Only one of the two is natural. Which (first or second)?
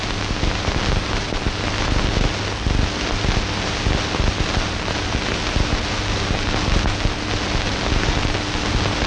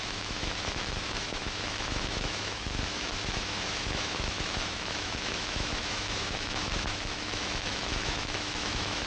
first